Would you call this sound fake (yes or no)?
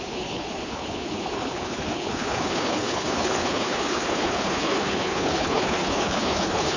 yes